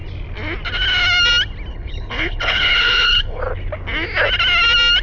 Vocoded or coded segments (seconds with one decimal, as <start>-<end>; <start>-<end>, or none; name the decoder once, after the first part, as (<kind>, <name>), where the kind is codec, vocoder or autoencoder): 1.7-3.4 (codec, HILCodec)